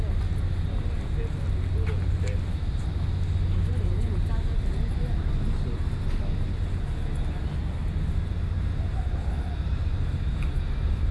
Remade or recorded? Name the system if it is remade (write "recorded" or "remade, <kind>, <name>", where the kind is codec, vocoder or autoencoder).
recorded